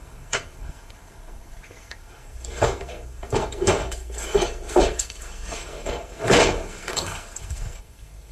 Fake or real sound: fake